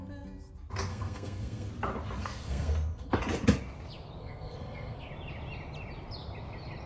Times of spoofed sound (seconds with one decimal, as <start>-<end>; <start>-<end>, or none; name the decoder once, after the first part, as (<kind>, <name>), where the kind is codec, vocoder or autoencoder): 0.9-1.7 (codec, SNAC); 2.2-3.2; 4.2-5.1